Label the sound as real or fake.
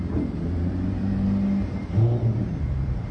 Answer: fake